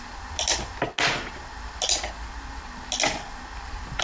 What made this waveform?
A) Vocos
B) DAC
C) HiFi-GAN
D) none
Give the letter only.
D